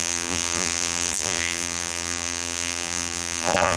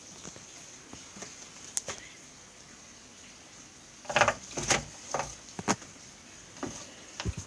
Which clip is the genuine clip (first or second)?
second